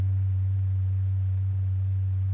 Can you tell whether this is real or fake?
real